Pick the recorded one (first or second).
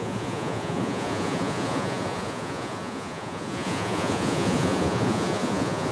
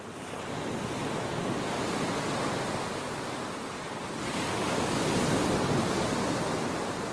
second